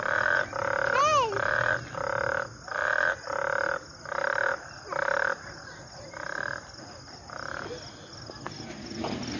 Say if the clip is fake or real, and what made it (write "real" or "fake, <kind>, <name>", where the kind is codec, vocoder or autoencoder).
real